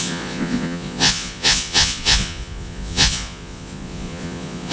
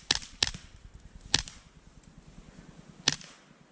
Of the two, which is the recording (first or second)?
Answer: second